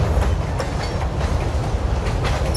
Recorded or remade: recorded